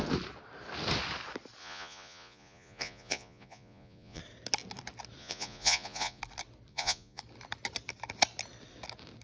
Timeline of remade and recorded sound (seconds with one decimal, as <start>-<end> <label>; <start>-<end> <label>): 0.0-1.6 recorded; 1.6-4.2 remade; 4.2-5.2 recorded; 5.2-6.2 remade; 6.2-6.7 recorded; 6.7-7.2 remade; 7.2-9.2 recorded